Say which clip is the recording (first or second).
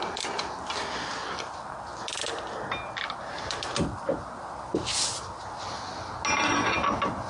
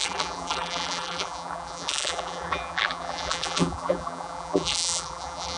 first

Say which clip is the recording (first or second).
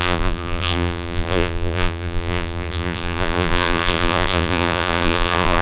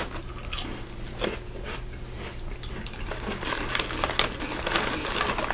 second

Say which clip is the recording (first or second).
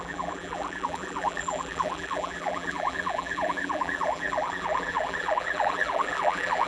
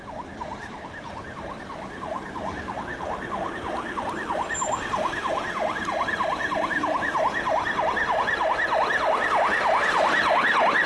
second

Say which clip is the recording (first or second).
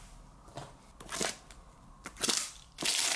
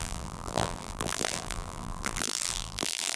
first